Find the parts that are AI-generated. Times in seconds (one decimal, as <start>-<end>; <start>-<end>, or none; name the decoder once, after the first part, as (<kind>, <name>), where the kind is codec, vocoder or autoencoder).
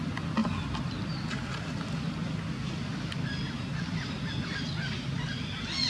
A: none